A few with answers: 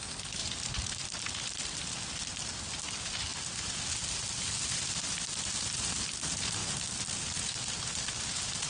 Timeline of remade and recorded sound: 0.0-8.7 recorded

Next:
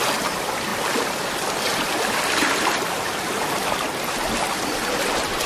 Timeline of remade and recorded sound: 0.0-5.5 recorded